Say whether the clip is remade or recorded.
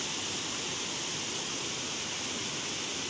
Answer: recorded